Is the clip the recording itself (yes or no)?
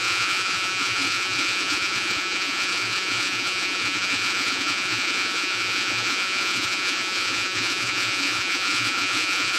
no